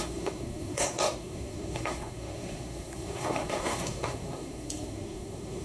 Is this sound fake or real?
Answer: fake